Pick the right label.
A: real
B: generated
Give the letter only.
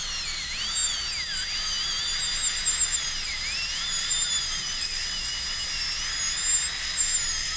A